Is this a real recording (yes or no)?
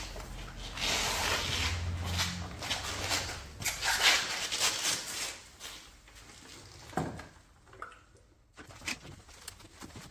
yes